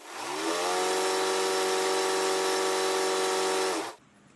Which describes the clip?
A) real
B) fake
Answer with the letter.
A